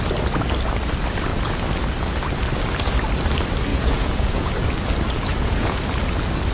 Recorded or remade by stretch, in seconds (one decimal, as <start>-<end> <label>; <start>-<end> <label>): 0.0-3.7 recorded; 3.7-4.5 remade; 4.5-5.3 recorded; 5.3-5.8 remade; 5.8-6.5 recorded